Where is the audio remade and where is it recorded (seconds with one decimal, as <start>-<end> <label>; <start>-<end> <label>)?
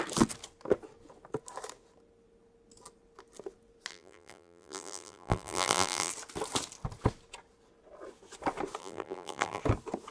0.0-3.9 recorded; 3.9-6.1 remade; 6.1-8.8 recorded; 8.8-9.6 remade; 9.6-10.1 recorded